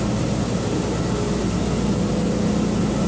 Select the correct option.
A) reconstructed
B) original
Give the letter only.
B